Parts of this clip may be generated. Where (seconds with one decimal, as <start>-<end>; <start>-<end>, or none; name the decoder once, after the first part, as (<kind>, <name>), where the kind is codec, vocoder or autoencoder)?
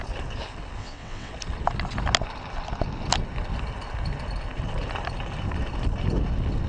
0.8-1.3 (vocoder, WaveNeXt)